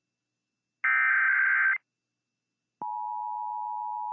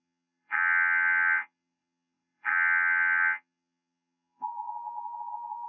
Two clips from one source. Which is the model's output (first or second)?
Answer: second